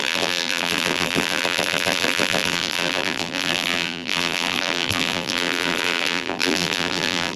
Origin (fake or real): fake